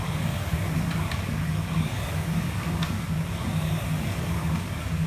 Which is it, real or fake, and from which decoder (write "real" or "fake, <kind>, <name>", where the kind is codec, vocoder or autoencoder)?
fake, codec, DAC